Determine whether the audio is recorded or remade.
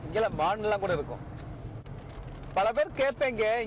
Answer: recorded